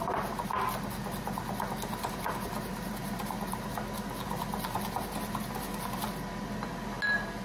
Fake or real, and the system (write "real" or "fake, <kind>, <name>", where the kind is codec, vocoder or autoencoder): real